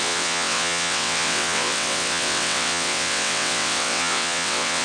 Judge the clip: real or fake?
fake